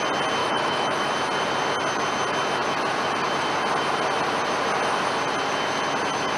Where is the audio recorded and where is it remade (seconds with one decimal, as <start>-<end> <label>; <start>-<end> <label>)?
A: 0.0-0.4 recorded; 0.4-1.1 remade; 1.1-6.4 recorded